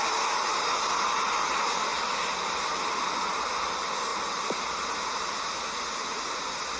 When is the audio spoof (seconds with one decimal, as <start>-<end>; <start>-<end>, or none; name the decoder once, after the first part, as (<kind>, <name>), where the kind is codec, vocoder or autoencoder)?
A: none